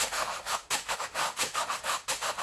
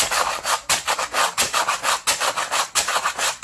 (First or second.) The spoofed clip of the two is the first